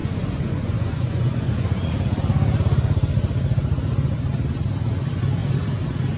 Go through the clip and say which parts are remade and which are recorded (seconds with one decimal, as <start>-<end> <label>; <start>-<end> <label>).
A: 0.0-1.9 remade; 1.9-6.2 recorded